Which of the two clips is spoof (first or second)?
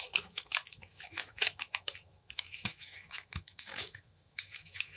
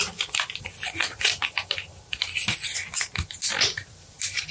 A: first